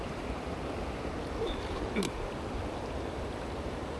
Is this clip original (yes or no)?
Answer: no